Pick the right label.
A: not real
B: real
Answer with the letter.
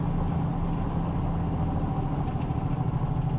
B